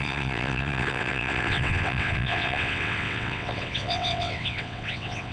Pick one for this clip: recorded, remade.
remade